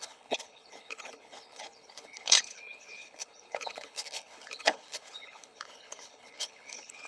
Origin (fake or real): fake